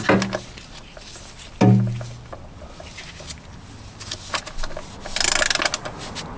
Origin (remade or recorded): recorded